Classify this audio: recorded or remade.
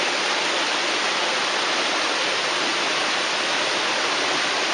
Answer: recorded